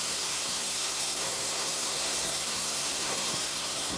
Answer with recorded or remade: remade